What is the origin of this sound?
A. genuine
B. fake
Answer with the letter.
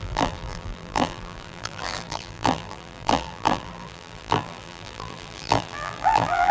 B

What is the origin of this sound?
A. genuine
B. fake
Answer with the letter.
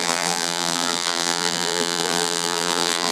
B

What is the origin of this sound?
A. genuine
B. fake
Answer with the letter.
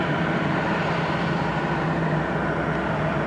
A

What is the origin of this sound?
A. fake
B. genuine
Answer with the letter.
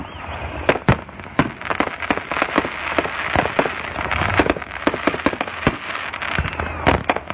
B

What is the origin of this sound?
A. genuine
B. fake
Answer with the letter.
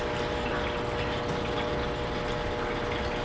A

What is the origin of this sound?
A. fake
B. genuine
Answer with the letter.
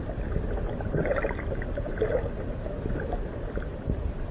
B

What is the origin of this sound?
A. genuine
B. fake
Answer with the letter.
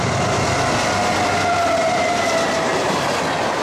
A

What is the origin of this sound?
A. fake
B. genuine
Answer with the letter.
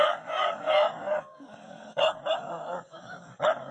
A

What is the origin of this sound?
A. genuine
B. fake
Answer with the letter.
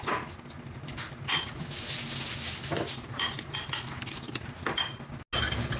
A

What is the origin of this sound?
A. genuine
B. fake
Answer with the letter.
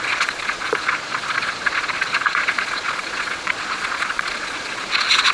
B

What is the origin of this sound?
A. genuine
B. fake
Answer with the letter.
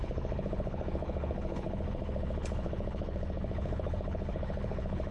B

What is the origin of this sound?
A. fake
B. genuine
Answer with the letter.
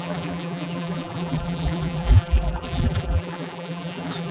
A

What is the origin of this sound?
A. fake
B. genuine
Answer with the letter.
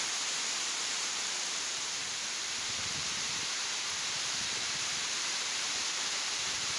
A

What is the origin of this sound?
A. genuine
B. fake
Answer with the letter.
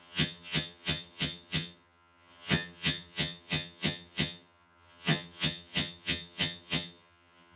B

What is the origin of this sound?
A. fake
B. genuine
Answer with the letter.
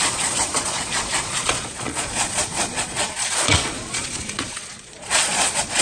A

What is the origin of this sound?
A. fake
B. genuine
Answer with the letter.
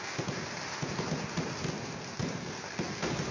B